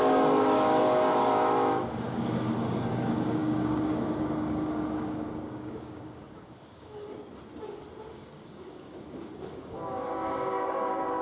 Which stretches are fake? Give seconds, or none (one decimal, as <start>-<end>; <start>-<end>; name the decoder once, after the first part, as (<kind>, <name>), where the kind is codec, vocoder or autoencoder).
0.0-7.1 (codec, DAC); 8.1-11.2